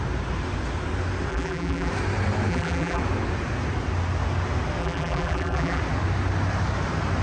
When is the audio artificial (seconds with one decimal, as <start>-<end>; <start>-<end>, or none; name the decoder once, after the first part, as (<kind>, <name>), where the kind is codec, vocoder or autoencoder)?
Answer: 1.3-1.9 (vocoder, BigVGAN v2); 2.5-3.0; 4.8-5.8